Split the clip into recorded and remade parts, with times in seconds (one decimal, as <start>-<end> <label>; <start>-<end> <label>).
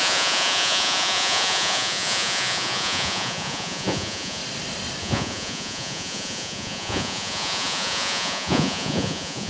0.0-4.4 remade; 4.4-5.0 recorded; 5.0-9.5 remade